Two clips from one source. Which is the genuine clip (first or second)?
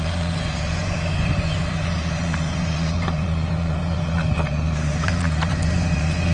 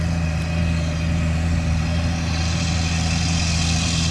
second